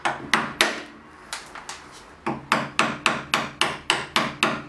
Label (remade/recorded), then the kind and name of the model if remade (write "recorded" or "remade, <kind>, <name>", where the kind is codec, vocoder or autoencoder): recorded